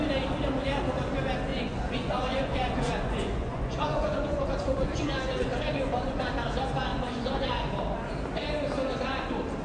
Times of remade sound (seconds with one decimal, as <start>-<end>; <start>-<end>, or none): 1.5-6.2; 6.9-7.7